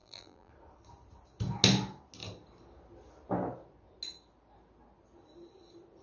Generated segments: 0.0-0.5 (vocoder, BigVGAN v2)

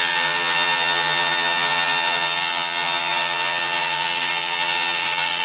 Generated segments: 0.0-5.4 (vocoder, BigVGAN v2)

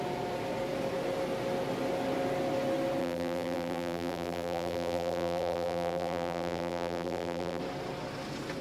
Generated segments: 3.0-7.6 (vocoder, BigVGAN v2)

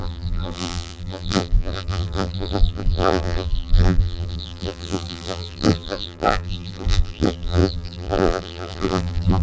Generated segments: 0.0-9.4 (vocoder, BigVGAN v2)